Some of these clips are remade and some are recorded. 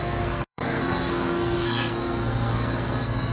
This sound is remade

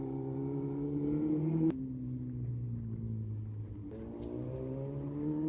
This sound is recorded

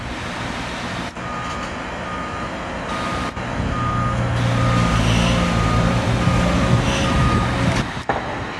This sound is recorded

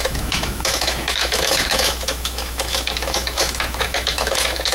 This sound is remade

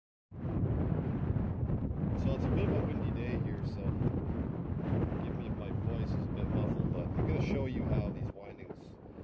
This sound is recorded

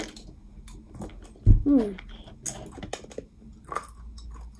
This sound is recorded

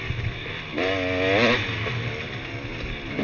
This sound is recorded